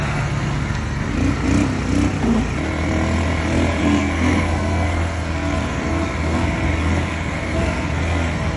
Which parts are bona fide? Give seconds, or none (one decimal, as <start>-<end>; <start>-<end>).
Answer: 1.1-3.8